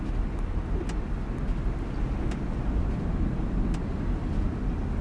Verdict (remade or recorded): recorded